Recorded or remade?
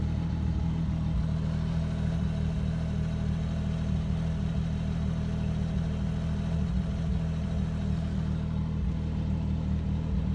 recorded